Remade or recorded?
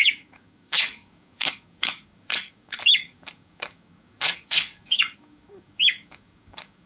remade